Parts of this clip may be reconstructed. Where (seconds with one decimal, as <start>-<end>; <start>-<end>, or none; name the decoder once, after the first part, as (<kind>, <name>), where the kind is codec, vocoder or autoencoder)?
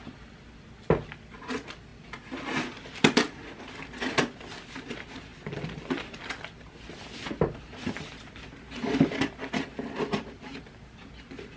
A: none